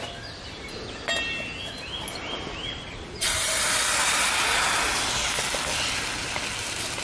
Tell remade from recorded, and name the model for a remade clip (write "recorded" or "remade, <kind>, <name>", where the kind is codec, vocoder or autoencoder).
recorded